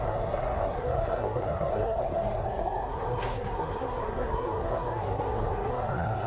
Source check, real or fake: fake